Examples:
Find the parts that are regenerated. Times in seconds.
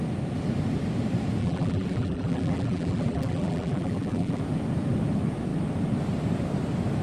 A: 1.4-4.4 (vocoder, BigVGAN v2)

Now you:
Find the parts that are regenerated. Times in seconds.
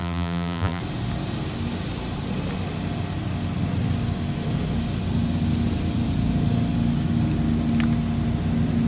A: 0.0-0.8 (vocoder, BigVGAN v2)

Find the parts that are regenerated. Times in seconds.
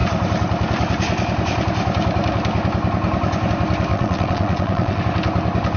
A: 3.9-5.0 (vocoder, WaveNeXt)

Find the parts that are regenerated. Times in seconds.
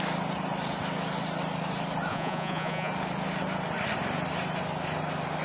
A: 2.1-2.9 (vocoder, Vocos)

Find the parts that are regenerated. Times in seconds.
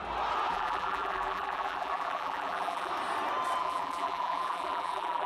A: 0.5-2.9 (vocoder, BigVGAN v2); 3.6-5.3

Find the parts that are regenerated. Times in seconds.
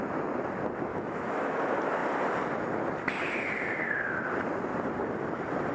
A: 0.9-1.6 (autoencoder, DAC-VAE)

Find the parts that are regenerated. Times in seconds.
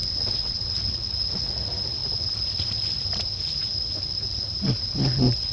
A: 0.0-0.7 (vocoder, WaveNeXt)